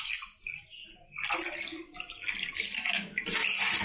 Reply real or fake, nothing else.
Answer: real